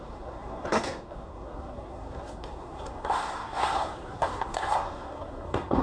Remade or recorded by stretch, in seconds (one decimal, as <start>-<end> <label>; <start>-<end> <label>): 0.0-5.8 remade